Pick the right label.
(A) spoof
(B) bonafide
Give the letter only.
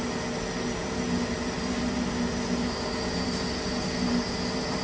B